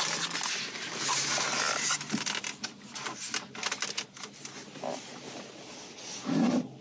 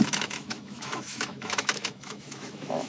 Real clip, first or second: first